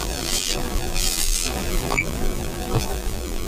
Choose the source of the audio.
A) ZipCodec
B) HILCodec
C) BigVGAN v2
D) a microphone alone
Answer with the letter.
C